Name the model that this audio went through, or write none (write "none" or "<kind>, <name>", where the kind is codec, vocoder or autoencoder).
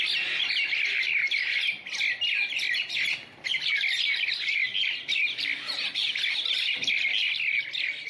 none